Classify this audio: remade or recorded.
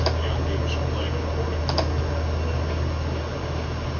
recorded